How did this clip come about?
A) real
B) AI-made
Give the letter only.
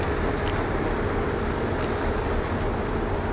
A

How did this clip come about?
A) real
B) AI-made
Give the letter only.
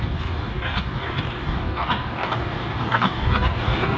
B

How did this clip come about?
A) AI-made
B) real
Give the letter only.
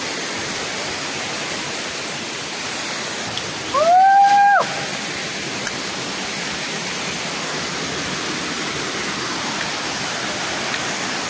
B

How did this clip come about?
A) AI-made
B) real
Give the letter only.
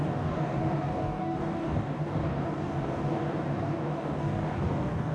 A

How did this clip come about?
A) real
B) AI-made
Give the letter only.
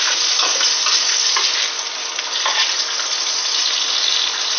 A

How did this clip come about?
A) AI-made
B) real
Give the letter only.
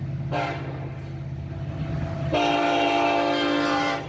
B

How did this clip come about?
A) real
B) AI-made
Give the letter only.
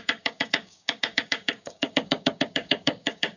B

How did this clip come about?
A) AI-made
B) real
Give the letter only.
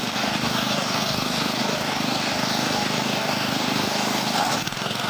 A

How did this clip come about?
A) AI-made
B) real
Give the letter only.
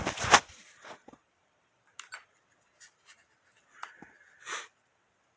B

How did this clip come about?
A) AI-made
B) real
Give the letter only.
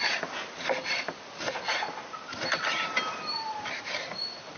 B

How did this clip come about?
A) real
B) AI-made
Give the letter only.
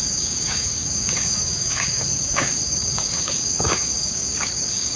B